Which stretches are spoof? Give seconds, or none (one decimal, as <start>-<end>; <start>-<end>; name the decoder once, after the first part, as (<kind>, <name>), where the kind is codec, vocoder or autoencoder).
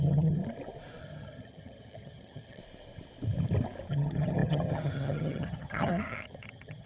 0.0-0.4 (vocoder, HiFi-GAN); 1.0-2.6; 3.9-6.9